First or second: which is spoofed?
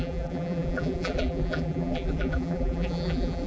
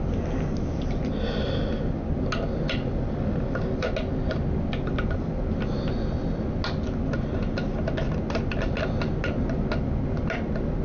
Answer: first